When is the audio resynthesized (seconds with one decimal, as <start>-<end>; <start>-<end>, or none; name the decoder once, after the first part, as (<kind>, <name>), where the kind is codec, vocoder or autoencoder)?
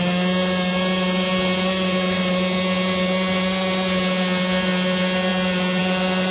none